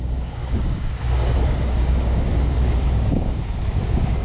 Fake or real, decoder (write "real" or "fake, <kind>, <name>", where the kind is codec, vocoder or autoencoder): fake, codec, DAC